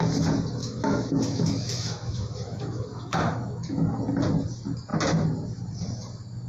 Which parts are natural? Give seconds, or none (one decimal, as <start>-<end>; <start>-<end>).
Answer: 0.0-0.6; 4.0-6.5